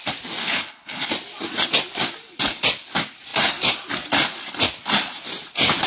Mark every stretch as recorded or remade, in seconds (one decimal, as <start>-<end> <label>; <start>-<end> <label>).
0.0-0.4 recorded; 0.4-1.1 remade; 1.1-5.9 recorded